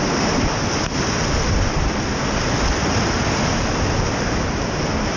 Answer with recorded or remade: recorded